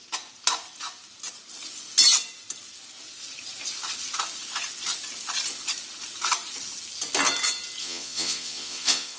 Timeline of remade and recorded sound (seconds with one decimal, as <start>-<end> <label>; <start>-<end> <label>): 0.0-7.8 recorded; 7.8-9.2 remade